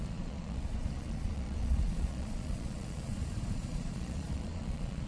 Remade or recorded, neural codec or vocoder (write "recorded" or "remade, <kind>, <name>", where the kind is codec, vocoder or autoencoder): remade, vocoder, Vocos